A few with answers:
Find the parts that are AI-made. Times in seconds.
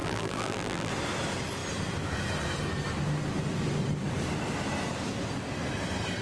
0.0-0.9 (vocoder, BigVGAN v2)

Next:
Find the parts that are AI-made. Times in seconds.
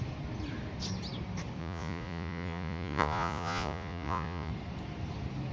1.6-4.5 (vocoder, Vocos)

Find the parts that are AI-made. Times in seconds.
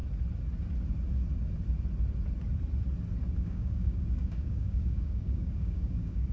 3.4-6.3 (codec, DAC)